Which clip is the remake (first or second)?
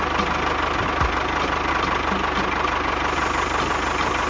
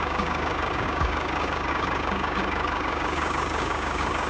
second